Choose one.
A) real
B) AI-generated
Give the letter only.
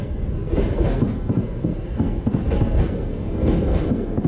B